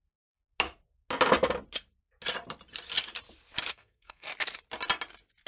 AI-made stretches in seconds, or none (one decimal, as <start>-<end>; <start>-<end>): 0.0-0.4; 3.7-4.3